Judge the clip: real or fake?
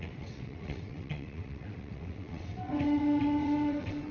fake